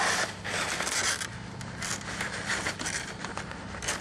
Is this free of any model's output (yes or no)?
yes